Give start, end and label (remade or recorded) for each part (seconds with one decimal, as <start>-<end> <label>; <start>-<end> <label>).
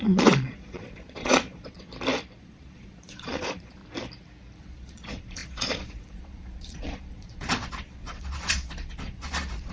0.0-1.9 remade; 1.9-2.4 recorded; 2.4-3.8 remade; 3.8-4.6 recorded; 4.6-9.7 remade